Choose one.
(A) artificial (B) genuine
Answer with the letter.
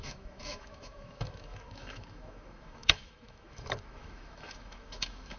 A